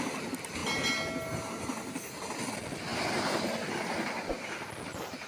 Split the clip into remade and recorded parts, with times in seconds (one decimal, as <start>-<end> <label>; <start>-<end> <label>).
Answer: 0.0-5.3 recorded